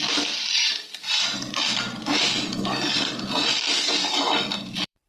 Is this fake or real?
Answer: fake